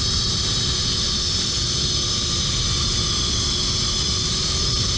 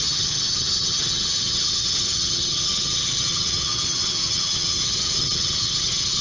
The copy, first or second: second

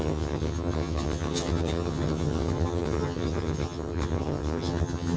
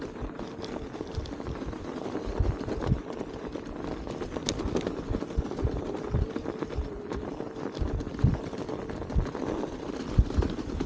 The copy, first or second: first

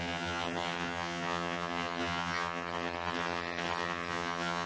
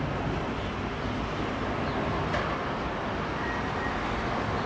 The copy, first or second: first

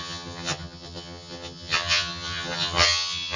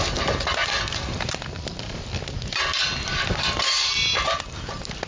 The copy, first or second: first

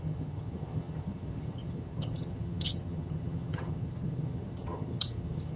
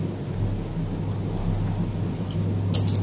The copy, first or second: first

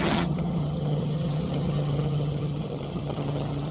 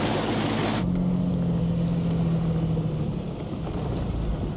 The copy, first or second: first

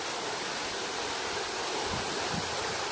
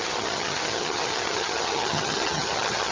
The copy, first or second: second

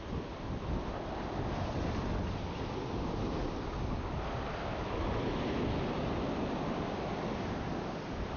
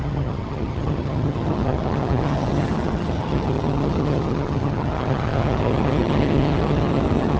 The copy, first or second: second